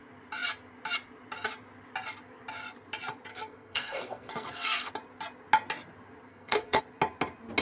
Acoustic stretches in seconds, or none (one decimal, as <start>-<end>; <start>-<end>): 0.0-3.3; 4.9-6.3; 6.8-7.6